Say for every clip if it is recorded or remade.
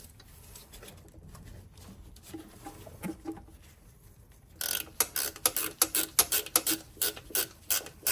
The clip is recorded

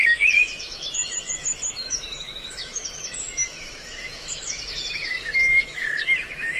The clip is remade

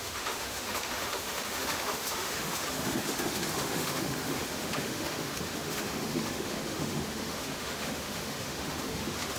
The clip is remade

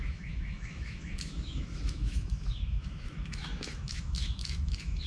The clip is remade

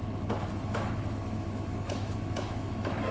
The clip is remade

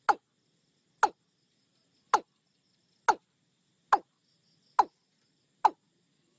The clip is recorded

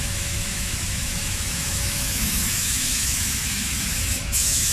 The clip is remade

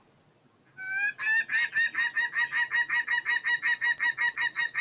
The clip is recorded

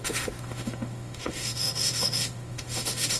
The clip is remade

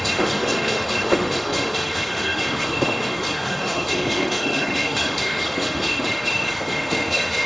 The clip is remade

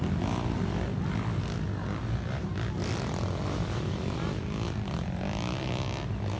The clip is recorded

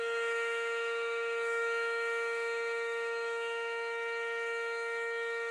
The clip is remade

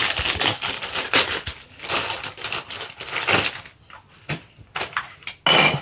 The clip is recorded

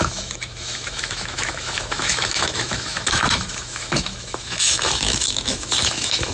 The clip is remade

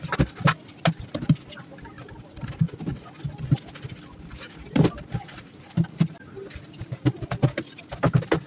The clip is recorded